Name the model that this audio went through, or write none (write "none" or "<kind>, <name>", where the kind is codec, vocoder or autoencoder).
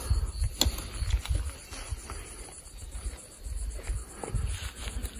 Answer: none